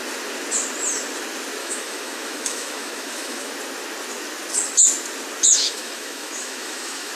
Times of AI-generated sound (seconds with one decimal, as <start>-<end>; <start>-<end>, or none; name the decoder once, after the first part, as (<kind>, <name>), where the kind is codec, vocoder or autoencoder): 1.6-3.5 (autoencoder, DAC-VAE); 5.5-7.1